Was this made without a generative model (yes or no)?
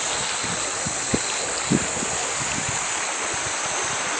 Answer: yes